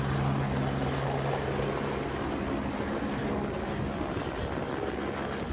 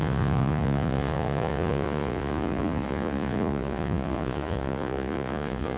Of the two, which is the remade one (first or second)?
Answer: second